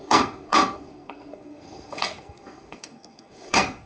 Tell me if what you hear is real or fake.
fake